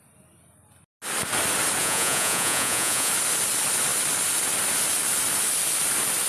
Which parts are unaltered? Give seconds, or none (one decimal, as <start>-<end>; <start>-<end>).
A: 0.0-1.8; 3.1-6.3